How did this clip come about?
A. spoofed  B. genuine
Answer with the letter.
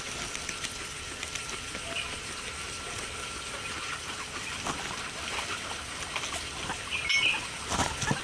B